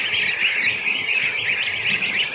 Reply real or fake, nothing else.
real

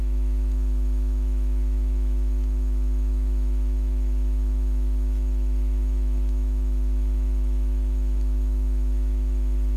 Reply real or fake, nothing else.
fake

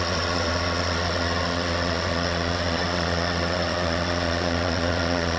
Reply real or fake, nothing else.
fake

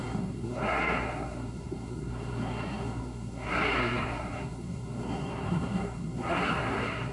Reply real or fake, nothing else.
fake